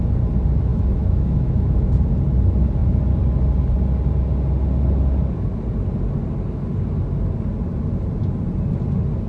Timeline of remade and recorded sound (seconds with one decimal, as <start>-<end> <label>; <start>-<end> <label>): 0.0-0.7 recorded; 0.7-2.0 remade; 2.0-9.3 recorded